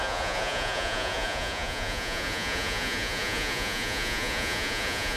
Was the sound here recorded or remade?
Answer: remade